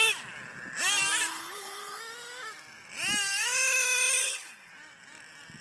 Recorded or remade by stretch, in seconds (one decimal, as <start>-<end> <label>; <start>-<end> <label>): 0.0-1.3 recorded; 1.3-2.0 remade; 2.0-4.2 recorded; 4.2-4.7 remade; 4.7-5.6 recorded